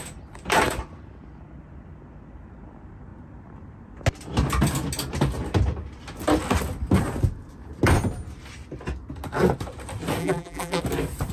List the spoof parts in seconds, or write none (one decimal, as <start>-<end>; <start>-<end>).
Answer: 10.2-10.8